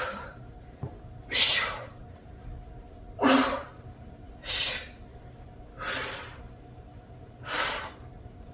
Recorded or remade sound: remade